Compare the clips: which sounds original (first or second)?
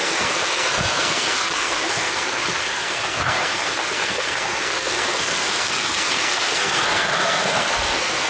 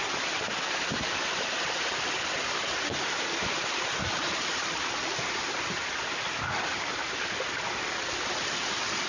second